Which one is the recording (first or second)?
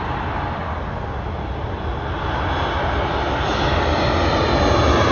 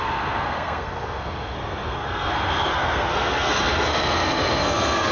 first